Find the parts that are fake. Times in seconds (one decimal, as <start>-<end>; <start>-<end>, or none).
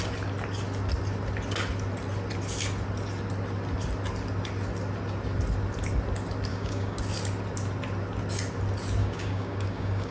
6.5-7.0; 9.0-10.1